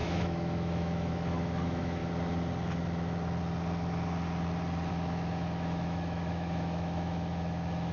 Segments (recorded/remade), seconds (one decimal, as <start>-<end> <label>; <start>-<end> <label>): 0.0-2.0 remade; 2.0-4.9 recorded; 4.9-7.9 remade